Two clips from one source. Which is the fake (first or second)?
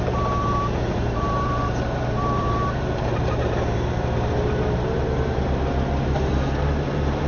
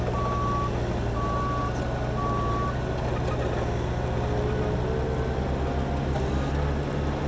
first